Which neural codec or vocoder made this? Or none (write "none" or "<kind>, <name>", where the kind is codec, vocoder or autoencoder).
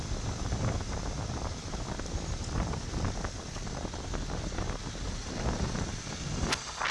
none